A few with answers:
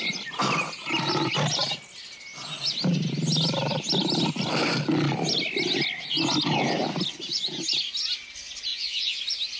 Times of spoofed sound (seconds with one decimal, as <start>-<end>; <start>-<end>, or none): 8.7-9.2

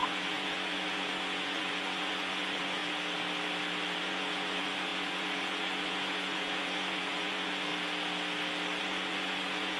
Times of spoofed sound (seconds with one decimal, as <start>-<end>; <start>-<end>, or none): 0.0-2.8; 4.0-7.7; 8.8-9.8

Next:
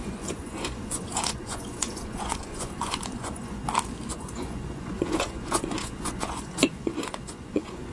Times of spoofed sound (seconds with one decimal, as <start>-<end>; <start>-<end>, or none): 0.0-3.6; 4.1-7.9

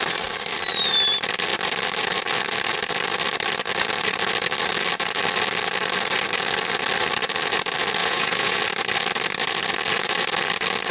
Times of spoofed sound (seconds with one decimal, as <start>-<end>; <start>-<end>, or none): 8.0-8.6

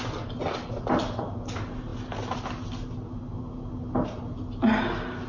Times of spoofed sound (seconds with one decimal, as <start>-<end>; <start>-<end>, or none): none